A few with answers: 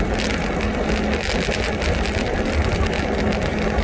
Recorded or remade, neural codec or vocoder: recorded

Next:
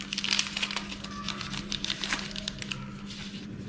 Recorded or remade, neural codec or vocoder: recorded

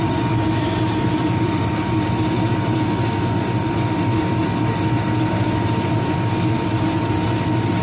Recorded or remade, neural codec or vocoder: remade, vocoder, BigVGAN v2